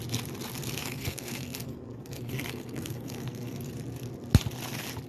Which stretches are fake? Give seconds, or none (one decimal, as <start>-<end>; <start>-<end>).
0.6-3.7